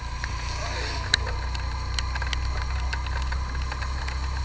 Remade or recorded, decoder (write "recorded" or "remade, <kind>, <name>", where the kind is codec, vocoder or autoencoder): recorded